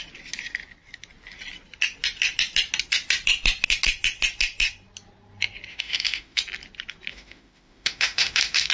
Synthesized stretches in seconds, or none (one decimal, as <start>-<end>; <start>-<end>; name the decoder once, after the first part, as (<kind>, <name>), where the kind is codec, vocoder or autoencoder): 5.7-6.4 (autoencoder, DAC-VAE); 7.1-8.7

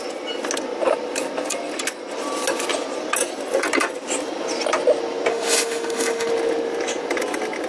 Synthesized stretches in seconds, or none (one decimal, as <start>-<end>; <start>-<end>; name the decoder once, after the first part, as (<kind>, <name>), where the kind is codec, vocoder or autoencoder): 5.3-6.3 (autoencoder, DAC-VAE)

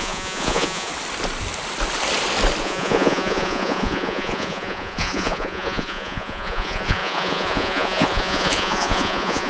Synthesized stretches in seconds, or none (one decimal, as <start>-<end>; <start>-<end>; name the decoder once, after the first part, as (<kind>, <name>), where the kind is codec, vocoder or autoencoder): 0.0-0.9 (vocoder, Vocos); 2.6-9.5

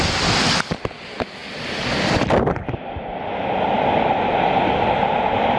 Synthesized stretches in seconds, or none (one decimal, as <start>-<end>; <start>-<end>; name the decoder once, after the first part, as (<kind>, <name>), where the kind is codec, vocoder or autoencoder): none

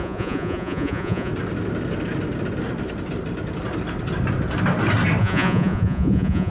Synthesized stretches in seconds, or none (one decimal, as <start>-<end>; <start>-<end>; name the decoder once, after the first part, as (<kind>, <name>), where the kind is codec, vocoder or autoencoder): 0.0-1.3 (vocoder, Vocos); 5.2-6.5

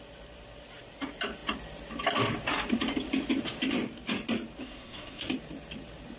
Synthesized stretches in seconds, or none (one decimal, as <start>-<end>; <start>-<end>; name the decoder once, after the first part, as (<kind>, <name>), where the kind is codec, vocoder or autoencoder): 4.6-5.2 (codec, SNAC)

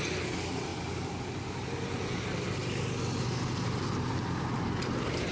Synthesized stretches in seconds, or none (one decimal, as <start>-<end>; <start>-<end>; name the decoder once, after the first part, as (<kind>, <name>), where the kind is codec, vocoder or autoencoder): none

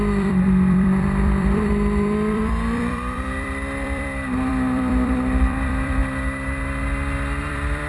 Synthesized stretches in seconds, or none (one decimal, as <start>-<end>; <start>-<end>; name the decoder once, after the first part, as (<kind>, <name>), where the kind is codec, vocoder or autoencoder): 0.0-6.0 (vocoder, BigVGAN v2); 7.4-7.9